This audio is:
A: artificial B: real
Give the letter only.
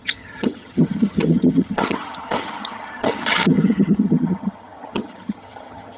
A